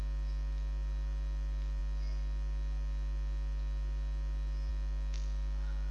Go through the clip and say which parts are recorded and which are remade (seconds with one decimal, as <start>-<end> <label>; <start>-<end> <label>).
0.0-5.9 recorded